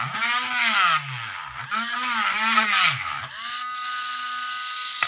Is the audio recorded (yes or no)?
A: yes